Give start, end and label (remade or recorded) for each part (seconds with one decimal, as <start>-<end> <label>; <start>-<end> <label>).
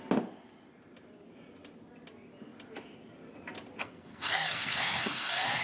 0.0-3.8 recorded; 3.8-5.6 remade